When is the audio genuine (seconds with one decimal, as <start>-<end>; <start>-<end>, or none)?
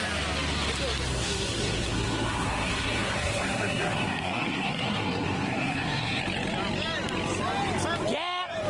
0.0-1.1; 6.2-8.7